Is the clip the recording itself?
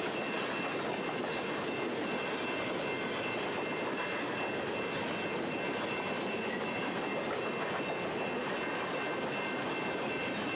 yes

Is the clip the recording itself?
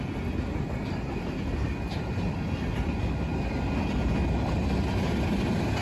yes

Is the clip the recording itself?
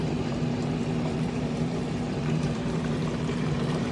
no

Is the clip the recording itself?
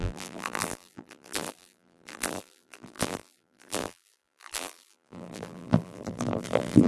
no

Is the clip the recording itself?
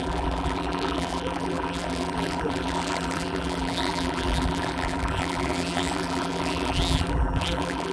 no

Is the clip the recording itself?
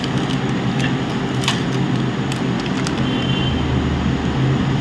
yes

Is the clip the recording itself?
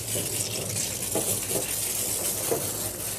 yes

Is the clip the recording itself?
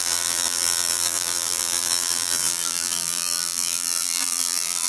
no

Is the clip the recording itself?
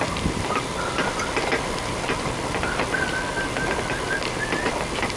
no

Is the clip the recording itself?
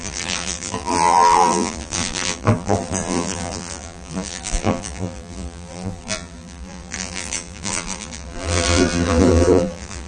no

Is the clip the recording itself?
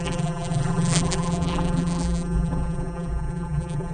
no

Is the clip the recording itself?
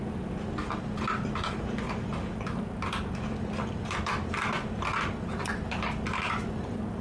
yes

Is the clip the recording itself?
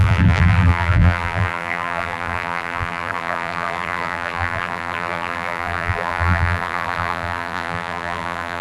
no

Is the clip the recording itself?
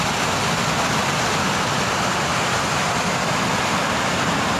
yes